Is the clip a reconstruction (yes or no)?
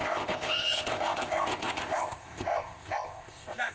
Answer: yes